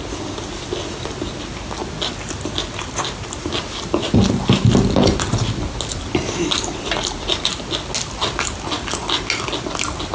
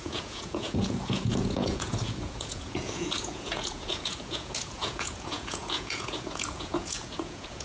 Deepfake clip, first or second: second